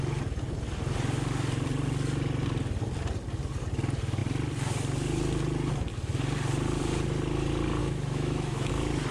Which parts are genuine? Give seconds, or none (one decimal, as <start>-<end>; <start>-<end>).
0.0-7.8; 8.7-9.1